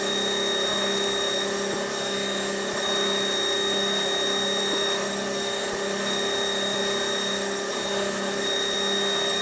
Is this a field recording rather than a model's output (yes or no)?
yes